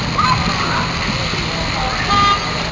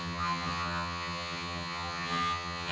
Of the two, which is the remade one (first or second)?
second